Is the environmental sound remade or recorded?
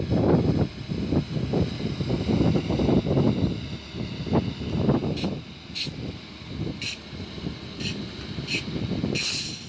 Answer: recorded